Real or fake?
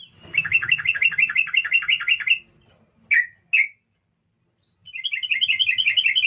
real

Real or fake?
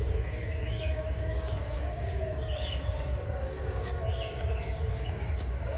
fake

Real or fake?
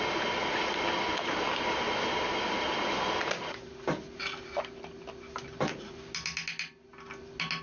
real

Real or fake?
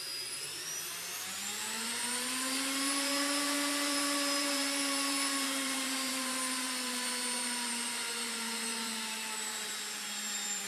fake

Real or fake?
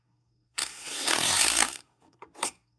fake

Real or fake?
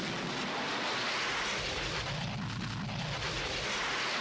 real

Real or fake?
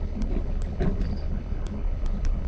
fake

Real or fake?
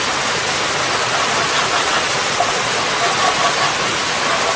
real